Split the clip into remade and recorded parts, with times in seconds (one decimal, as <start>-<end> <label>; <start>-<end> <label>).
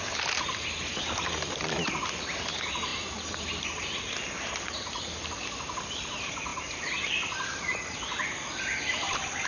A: 0.0-9.5 recorded